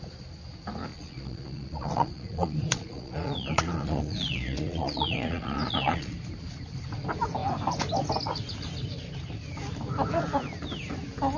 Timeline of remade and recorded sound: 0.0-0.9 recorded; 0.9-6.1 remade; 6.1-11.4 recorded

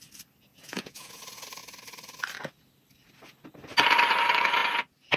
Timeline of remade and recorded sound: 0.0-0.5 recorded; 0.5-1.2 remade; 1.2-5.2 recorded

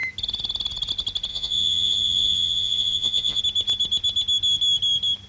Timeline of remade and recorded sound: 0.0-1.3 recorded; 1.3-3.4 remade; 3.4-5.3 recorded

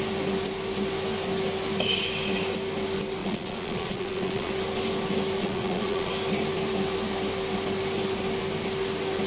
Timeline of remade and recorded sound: 0.0-3.2 recorded; 3.2-4.5 remade; 4.5-5.4 recorded; 5.4-6.1 remade; 6.1-9.3 recorded